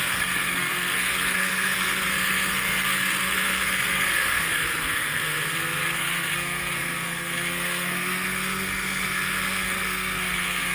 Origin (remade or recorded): remade